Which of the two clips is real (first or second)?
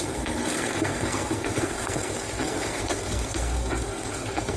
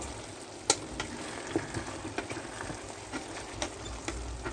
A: second